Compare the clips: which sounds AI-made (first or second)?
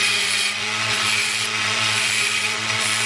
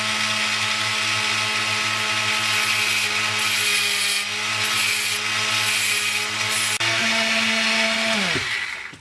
first